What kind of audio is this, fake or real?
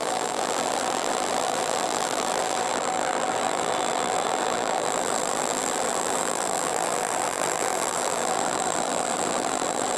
fake